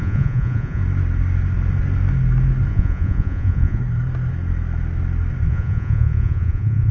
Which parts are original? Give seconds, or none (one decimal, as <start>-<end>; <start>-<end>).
0.8-2.7; 3.8-5.5